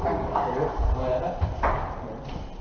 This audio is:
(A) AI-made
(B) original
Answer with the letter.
B